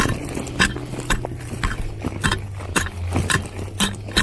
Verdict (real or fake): real